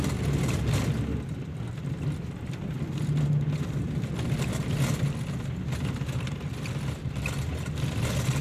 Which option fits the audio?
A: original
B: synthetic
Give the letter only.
A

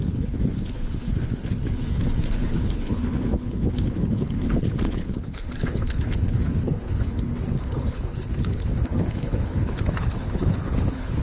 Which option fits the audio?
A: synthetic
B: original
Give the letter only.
A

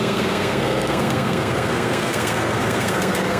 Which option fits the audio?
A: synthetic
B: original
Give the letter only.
A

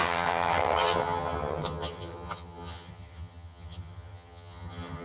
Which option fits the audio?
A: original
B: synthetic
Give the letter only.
B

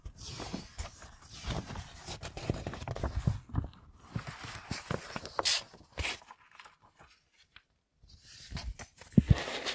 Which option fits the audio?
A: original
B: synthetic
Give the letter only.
A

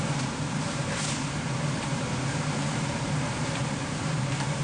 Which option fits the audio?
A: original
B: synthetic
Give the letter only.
B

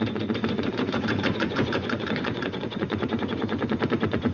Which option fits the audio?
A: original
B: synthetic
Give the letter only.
B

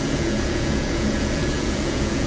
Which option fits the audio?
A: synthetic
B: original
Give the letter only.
A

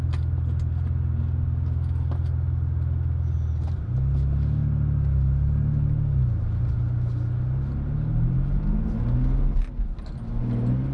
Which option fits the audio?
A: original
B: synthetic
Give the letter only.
A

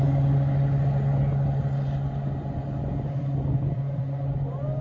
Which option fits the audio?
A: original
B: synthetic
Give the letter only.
A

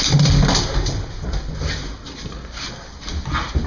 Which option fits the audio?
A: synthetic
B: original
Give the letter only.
B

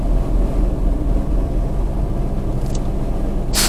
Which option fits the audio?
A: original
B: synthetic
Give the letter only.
A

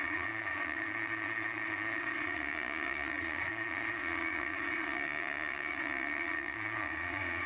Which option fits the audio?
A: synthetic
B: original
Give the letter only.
A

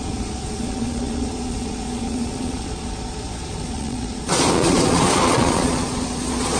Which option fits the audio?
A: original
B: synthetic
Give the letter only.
B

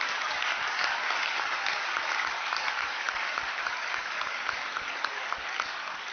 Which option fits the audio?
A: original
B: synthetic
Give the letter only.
B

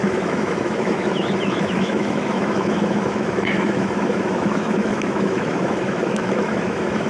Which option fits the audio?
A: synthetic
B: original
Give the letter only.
A